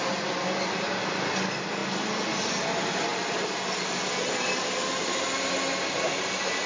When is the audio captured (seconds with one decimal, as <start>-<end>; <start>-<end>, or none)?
0.0-6.7